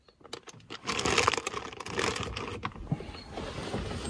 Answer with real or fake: real